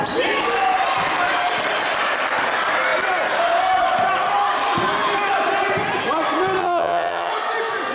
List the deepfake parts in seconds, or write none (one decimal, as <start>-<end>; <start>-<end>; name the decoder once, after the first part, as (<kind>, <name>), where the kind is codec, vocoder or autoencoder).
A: 6.6-7.3 (vocoder, HiFi-GAN)